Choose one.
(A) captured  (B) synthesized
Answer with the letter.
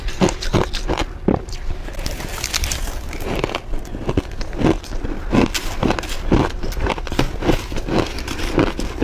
A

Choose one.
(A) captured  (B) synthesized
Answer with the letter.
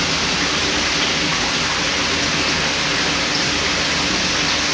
A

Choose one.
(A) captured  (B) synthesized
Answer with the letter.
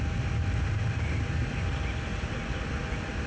A